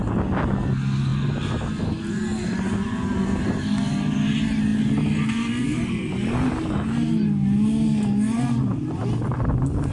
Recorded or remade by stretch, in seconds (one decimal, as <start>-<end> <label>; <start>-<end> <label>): 0.0-9.9 recorded